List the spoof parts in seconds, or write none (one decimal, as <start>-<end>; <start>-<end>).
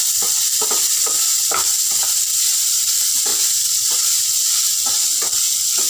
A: none